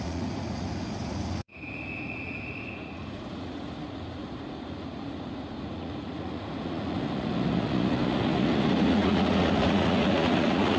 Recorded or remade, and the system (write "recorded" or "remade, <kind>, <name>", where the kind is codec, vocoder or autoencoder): remade, vocoder, Vocos